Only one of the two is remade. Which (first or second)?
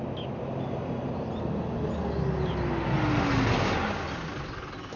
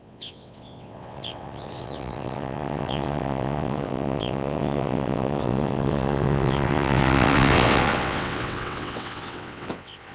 second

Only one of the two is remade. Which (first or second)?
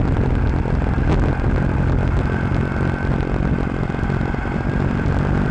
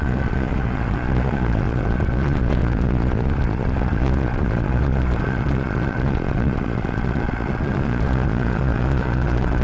second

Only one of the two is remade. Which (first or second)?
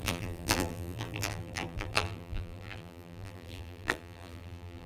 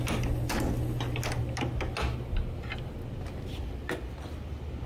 first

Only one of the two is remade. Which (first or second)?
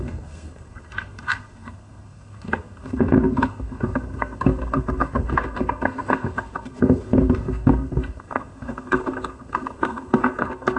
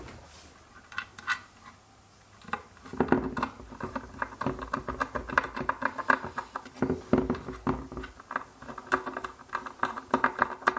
first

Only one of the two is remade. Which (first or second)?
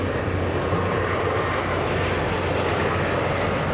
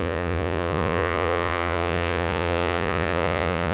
second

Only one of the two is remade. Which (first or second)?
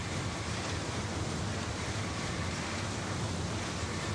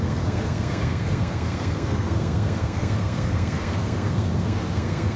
second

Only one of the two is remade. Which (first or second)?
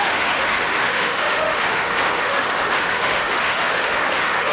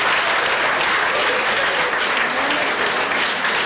first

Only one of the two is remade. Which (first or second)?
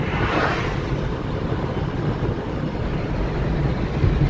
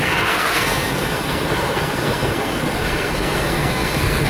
second